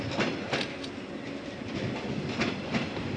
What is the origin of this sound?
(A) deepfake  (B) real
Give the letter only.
B